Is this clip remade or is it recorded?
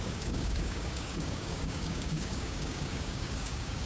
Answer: remade